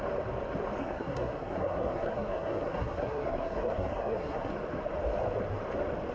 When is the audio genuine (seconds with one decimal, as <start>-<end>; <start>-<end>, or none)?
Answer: 0.0-0.8; 4.5-6.1